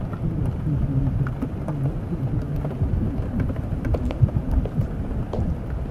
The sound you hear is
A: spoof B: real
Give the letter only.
B